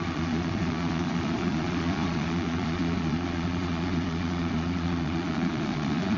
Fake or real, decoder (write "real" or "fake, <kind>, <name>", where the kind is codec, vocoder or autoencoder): fake, vocoder, Vocos